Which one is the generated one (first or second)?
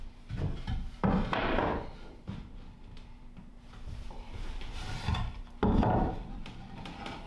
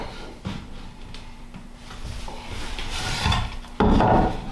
first